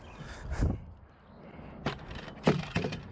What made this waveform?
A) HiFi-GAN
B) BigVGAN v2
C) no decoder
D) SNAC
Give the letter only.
C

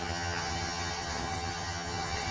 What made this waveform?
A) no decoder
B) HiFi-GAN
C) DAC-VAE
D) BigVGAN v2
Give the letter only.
B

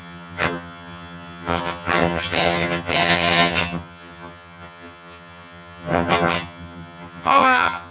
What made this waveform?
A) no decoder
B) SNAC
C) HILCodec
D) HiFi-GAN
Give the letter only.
D